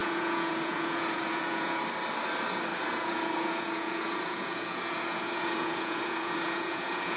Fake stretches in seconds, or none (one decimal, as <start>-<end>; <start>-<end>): 0.0-1.8; 2.7-7.2